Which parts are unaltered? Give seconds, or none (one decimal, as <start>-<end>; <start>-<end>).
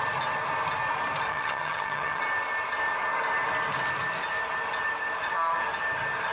0.0-1.3; 2.2-6.3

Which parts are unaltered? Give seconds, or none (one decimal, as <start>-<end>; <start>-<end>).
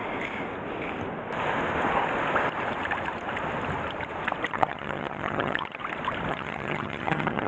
0.0-4.5; 5.8-6.3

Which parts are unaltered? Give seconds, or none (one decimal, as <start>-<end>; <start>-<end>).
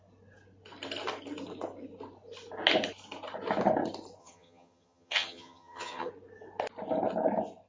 0.0-4.2; 6.1-7.7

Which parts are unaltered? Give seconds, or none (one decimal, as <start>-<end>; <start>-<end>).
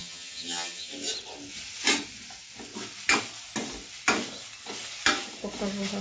0.9-6.0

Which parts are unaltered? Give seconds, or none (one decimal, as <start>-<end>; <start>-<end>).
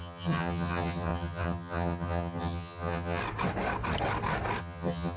3.2-4.6